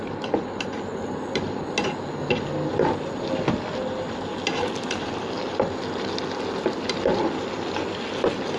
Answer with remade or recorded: recorded